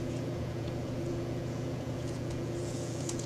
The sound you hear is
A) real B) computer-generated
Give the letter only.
B